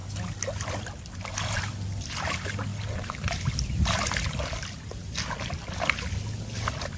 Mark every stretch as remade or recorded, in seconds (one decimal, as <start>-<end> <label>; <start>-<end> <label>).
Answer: 0.0-7.0 recorded